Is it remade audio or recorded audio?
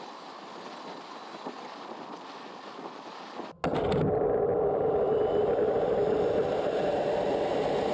recorded